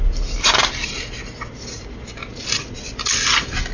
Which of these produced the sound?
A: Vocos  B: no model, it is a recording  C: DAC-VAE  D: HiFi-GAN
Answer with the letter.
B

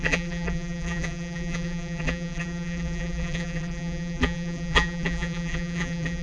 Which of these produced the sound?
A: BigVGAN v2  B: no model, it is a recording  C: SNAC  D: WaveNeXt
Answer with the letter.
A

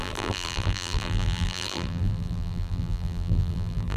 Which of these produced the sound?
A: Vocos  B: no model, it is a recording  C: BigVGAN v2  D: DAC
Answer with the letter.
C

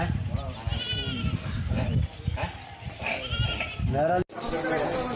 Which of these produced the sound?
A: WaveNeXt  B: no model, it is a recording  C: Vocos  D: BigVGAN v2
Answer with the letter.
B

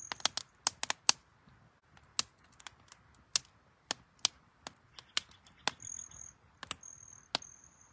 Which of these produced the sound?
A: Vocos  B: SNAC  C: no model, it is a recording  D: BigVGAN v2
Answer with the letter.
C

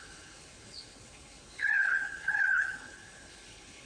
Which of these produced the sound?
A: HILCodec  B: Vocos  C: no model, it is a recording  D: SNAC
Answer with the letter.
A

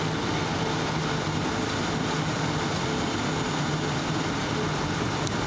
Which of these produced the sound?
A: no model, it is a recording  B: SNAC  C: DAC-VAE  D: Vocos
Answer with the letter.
A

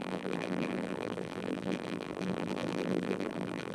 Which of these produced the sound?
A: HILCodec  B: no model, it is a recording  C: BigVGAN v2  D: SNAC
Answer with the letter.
C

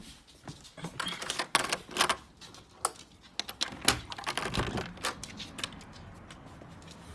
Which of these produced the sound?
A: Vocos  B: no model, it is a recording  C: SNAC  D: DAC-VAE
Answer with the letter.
B